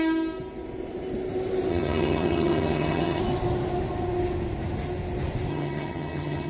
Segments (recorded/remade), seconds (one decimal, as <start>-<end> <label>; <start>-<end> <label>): 0.0-1.7 recorded; 1.7-3.2 remade; 3.2-5.5 recorded; 5.5-6.5 remade